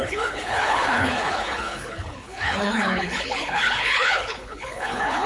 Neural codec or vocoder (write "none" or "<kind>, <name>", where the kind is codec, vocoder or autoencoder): codec, HILCodec